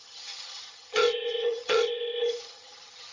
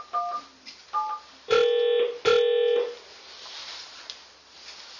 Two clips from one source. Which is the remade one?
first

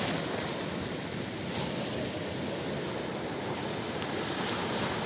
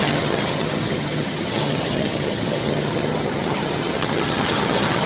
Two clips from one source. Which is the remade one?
second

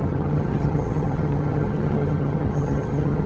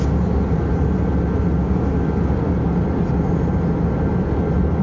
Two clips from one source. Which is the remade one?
first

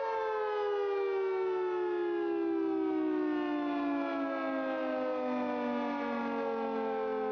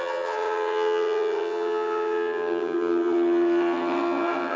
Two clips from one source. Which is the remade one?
second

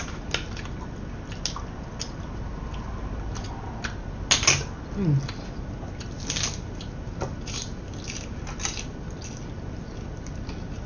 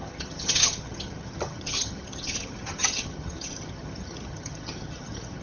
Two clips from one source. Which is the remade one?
second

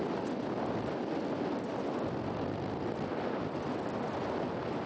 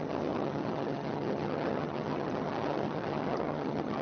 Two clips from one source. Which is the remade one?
second